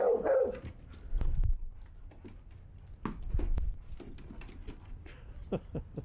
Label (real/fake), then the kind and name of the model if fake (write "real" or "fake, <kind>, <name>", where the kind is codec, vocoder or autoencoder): real